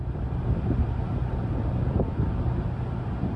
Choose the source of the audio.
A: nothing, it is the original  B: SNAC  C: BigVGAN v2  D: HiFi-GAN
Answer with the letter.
C